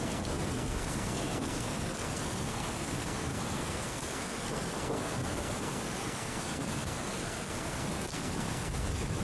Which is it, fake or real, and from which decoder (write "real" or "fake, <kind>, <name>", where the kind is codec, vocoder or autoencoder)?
fake, codec, SNAC